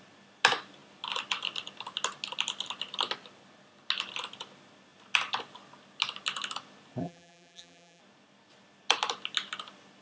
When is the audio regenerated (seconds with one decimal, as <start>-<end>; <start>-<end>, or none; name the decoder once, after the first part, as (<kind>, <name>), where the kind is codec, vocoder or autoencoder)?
7.0-8.0 (vocoder, BigVGAN v2)